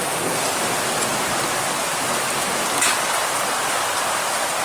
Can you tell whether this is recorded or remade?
recorded